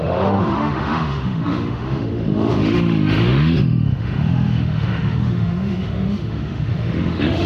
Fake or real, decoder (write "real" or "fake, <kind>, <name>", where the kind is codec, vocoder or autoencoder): fake, autoencoder, DAC-VAE